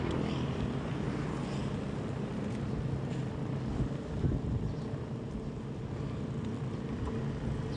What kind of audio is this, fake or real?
real